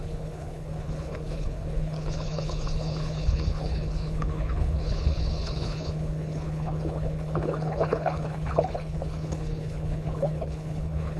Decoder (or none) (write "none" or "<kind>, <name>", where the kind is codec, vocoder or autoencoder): codec, HILCodec